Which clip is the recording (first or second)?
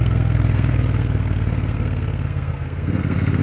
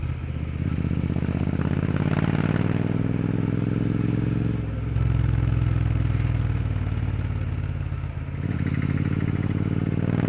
second